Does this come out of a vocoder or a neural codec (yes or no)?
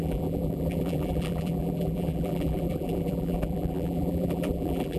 yes